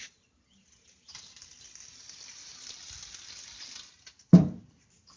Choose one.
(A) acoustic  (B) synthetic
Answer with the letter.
A